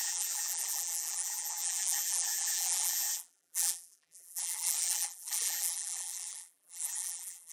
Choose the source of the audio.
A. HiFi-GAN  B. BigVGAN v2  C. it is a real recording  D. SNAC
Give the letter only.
B